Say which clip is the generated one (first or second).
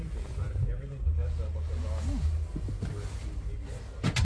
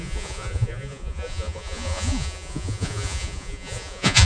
second